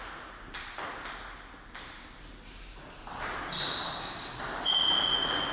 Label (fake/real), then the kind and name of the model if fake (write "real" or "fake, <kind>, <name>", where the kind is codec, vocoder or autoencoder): real